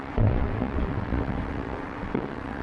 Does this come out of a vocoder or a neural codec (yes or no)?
yes